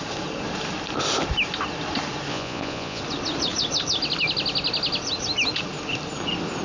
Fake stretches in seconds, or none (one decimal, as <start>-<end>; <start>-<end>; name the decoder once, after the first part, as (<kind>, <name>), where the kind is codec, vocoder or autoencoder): 2.3-3.0 (vocoder, Vocos)